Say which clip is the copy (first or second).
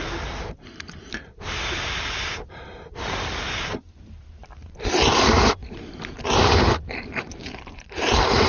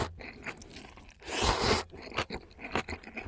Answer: first